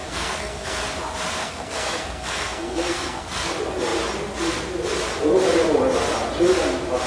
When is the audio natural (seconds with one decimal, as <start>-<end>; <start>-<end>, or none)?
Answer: 0.8-1.4; 3.5-7.1